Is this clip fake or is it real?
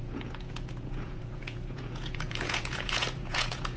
fake